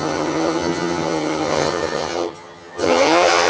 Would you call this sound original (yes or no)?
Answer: no